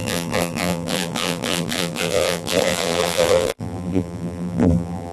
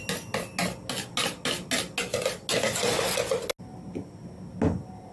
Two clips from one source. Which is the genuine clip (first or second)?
second